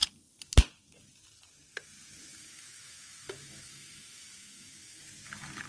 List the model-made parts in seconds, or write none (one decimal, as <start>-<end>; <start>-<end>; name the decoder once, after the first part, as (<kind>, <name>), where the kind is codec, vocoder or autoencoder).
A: 2.3-5.0 (autoencoder, DAC-VAE)